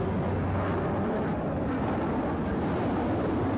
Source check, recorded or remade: recorded